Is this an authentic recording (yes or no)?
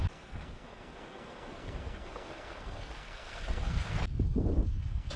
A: no